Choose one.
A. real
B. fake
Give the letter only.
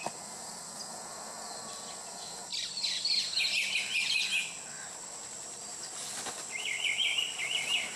A